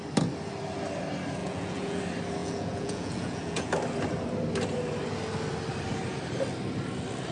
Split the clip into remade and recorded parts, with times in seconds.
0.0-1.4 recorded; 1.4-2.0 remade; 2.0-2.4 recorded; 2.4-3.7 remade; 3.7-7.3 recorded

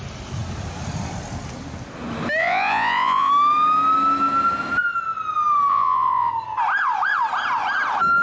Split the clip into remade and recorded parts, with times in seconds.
0.0-2.4 recorded; 2.4-3.3 remade; 3.3-5.7 recorded; 5.7-6.3 remade; 6.3-8.2 recorded

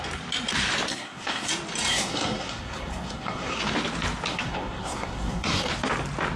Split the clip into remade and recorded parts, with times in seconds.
0.0-0.9 recorded; 0.9-1.5 remade; 1.5-1.9 recorded; 1.9-3.6 remade; 3.6-4.3 recorded; 4.3-5.7 remade; 5.7-6.4 recorded

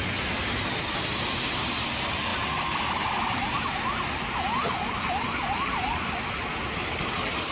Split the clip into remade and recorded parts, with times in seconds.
0.0-7.5 recorded